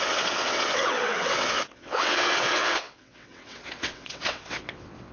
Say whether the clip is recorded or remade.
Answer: remade